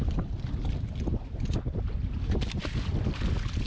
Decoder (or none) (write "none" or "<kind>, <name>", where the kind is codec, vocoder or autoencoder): none